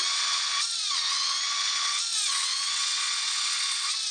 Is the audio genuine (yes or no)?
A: no